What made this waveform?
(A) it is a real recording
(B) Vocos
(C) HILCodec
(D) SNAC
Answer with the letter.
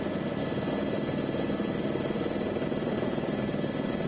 A